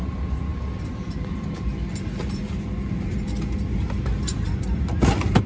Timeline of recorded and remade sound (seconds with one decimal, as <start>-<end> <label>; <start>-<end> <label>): 0.0-5.5 recorded